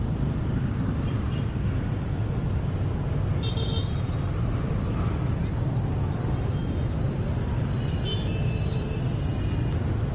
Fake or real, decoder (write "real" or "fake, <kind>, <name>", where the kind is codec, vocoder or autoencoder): real